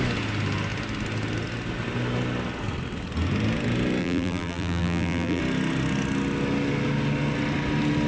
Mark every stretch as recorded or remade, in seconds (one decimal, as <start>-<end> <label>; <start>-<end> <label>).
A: 0.0-4.0 recorded; 4.0-5.4 remade; 5.4-8.1 recorded